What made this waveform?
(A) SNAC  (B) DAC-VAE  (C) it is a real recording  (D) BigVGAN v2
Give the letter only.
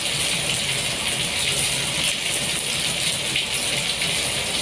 C